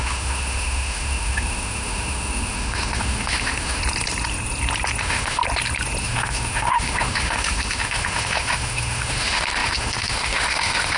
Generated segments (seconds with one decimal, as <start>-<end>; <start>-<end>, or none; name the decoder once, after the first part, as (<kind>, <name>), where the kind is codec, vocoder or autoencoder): 0.0-3.8 (autoencoder, DAC-VAE); 5.0-5.4; 6.0-11.0

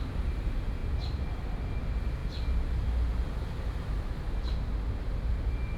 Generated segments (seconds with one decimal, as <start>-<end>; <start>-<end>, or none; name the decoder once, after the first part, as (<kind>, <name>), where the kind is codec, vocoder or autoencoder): none

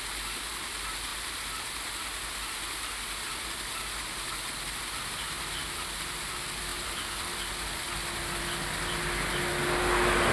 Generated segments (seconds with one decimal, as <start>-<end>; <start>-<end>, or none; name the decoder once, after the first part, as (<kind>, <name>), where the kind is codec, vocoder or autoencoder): none

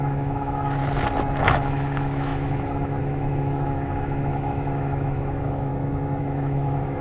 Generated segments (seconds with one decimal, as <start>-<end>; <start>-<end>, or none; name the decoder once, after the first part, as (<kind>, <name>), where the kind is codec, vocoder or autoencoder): 0.0-0.8 (autoencoder, DAC-VAE); 1.5-5.7; 6.2-7.0

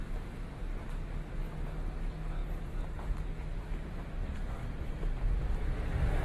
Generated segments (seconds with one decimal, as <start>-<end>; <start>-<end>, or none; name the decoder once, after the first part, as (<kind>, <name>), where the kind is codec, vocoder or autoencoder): none

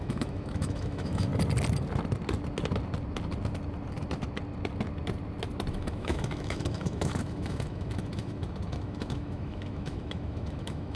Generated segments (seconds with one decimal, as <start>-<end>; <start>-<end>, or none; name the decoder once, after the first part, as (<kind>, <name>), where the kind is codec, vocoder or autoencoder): 0.0-1.3 (autoencoder, DAC-VAE); 5.7-11.0

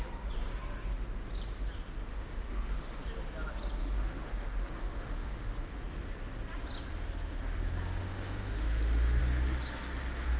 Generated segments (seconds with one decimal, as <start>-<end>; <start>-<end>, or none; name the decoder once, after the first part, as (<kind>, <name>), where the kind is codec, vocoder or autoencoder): 2.1-3.0 (autoencoder, DAC-VAE); 3.8-5.8; 8.0-9.2